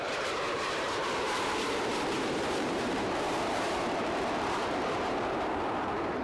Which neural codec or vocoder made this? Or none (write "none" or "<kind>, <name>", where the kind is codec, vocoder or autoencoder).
vocoder, BigVGAN v2